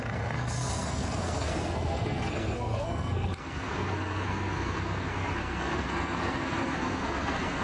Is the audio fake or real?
fake